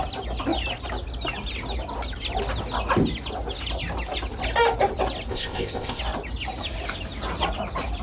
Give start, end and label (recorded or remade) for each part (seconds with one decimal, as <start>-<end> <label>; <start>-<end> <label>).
0.0-5.3 recorded; 5.3-6.0 remade; 6.0-8.0 recorded